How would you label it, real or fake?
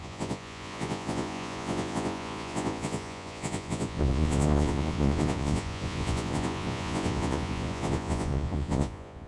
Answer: fake